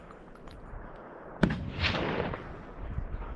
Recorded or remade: recorded